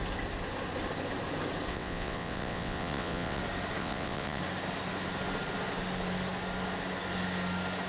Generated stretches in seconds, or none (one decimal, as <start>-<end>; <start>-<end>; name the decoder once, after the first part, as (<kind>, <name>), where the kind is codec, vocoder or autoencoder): 1.7-3.4 (vocoder, WaveNeXt); 3.8-4.4